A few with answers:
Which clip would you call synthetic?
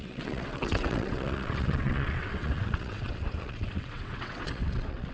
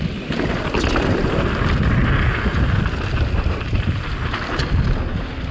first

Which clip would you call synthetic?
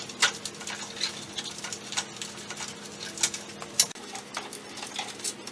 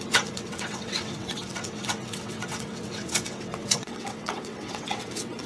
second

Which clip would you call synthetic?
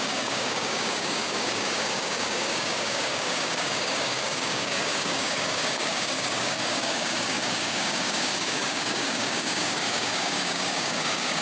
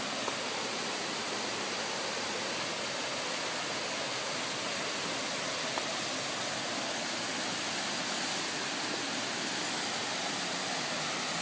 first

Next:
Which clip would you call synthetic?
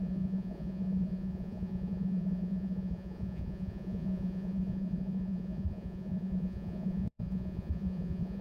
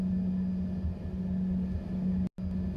first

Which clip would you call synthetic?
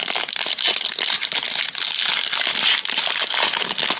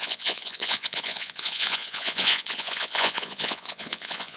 second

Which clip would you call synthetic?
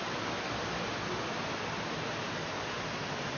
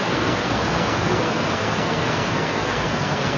second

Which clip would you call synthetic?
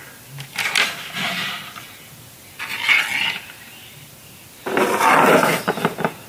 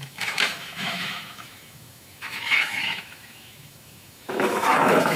second